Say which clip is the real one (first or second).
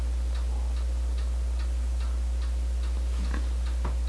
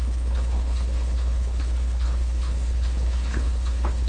first